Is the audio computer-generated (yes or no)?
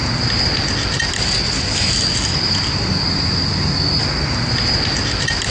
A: no